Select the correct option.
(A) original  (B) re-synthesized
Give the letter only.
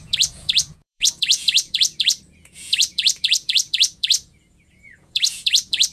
B